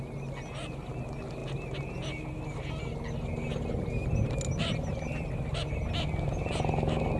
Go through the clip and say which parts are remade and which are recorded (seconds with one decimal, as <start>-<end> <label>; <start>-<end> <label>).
0.0-7.2 recorded